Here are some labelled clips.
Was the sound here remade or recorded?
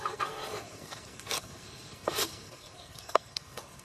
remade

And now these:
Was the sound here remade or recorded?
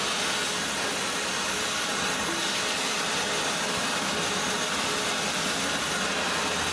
recorded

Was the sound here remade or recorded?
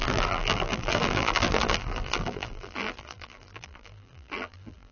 remade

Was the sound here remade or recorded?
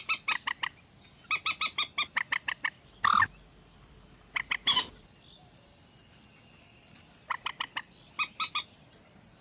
recorded